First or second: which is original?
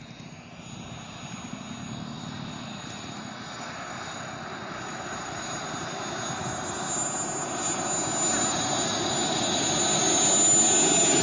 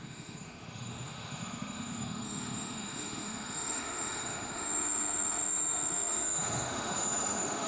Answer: first